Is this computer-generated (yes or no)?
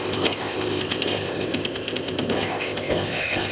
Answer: yes